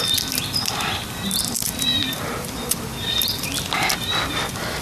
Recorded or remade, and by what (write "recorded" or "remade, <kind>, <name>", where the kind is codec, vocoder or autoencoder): remade, vocoder, BigVGAN v2